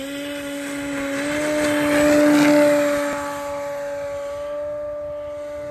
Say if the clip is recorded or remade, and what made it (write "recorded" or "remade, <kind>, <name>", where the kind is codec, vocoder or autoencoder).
recorded